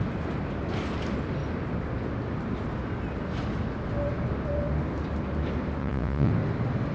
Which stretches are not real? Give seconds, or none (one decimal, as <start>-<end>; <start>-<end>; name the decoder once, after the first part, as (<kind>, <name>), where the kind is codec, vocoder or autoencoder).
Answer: 5.8-6.3 (vocoder, Vocos)